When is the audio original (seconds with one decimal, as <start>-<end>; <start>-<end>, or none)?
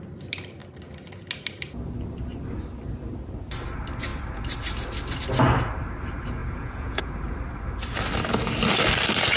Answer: 0.0-6.4; 7.1-9.4